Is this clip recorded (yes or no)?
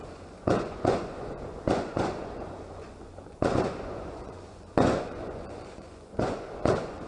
no